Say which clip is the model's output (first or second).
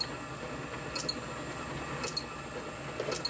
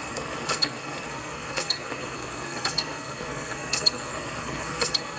second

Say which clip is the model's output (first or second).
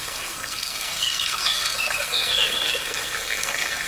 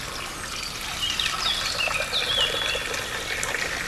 first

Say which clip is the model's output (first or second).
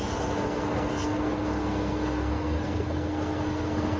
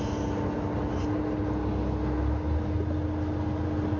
first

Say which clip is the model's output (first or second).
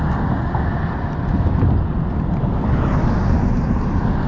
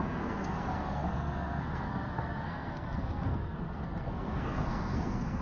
second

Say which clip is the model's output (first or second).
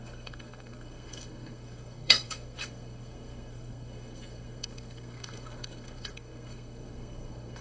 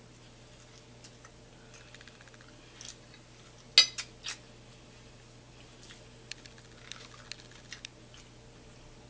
first